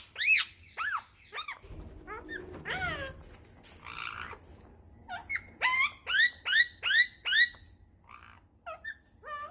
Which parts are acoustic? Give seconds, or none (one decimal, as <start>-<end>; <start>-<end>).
0.0-9.5

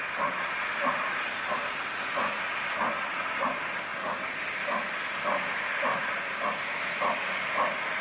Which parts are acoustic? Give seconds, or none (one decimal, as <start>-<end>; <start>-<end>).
0.0-8.0

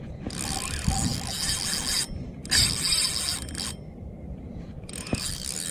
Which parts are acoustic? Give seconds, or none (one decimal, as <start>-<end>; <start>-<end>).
0.0-5.7

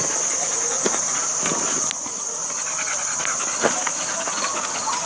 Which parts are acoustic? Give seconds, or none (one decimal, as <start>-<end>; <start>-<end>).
0.0-5.1

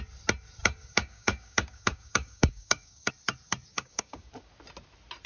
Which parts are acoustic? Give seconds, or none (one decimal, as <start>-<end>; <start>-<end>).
0.0-0.6; 3.1-3.7; 4.3-5.3

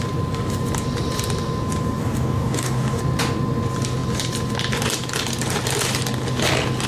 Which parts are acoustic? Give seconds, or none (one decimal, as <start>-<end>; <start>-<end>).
0.0-2.0; 3.0-6.9